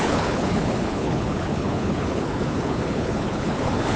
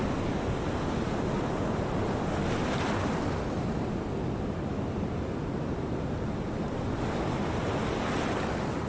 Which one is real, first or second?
second